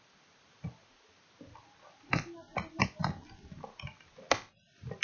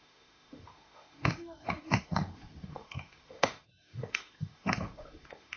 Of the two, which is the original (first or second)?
first